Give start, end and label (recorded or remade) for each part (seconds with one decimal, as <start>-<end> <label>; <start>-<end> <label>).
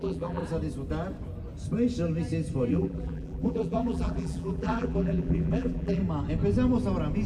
0.0-0.4 remade; 0.4-2.7 recorded; 2.7-6.0 remade; 6.0-7.3 recorded